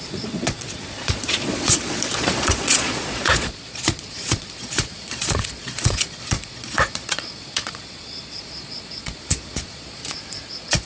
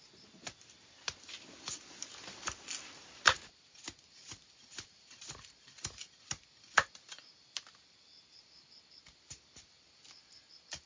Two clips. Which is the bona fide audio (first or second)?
second